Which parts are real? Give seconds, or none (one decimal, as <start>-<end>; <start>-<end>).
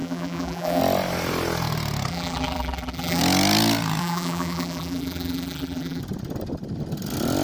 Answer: 0.8-2.1; 3.2-4.0; 6.0-7.4